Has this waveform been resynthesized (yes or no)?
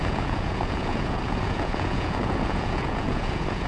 yes